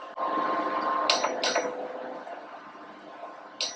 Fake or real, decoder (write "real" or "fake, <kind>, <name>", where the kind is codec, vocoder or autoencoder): real